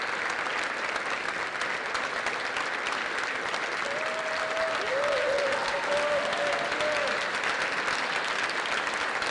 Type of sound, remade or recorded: recorded